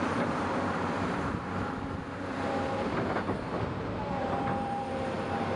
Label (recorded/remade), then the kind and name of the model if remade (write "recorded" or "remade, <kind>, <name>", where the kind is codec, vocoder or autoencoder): remade, vocoder, BigVGAN v2